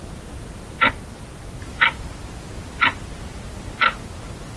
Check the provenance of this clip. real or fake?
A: real